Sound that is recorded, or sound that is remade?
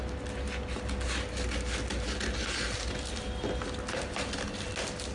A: recorded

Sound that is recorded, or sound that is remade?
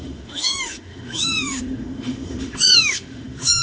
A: remade